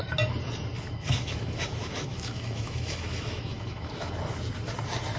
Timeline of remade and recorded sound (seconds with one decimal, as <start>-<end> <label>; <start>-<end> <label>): 0.0-1.0 recorded; 1.0-4.1 remade; 4.1-5.2 recorded